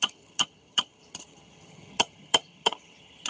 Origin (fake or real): fake